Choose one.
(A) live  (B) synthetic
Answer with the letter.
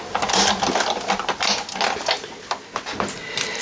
A